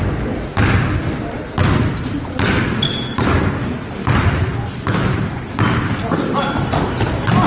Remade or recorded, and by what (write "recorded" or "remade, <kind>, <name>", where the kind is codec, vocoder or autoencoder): recorded